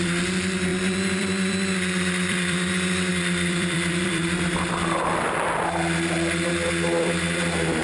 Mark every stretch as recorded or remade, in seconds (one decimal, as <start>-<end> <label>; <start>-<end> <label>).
0.0-0.7 recorded; 0.7-2.7 remade; 2.7-3.1 recorded; 3.1-4.2 remade; 4.2-7.8 recorded